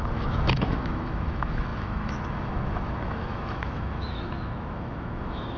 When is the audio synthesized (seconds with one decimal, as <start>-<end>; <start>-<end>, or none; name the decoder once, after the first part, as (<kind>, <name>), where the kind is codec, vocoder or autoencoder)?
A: 0.0-5.6 (autoencoder, DAC-VAE)